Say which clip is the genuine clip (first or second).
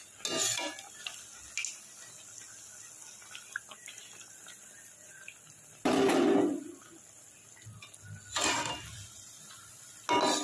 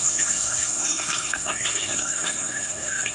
first